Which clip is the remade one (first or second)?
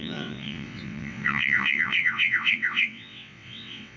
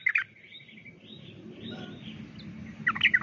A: first